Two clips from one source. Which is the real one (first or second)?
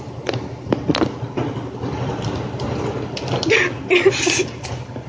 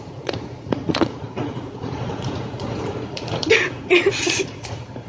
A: first